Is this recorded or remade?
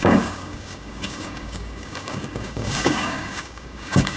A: remade